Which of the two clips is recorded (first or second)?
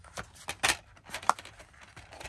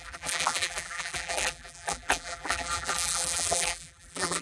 first